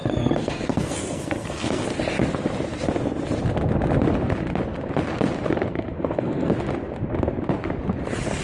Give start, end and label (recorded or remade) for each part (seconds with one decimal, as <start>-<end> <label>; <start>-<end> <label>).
0.0-1.8 remade; 1.8-5.7 recorded; 5.7-6.5 remade; 6.5-8.4 recorded